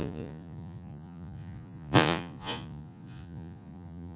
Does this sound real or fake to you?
fake